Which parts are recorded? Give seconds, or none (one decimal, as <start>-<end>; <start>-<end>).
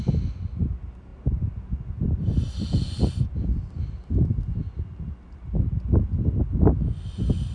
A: 0.0-7.5